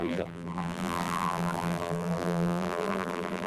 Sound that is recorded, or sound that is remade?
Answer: remade